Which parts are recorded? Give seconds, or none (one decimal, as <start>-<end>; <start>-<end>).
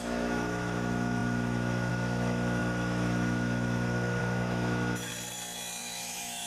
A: 5.1-5.8